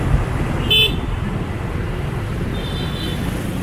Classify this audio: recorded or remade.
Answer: recorded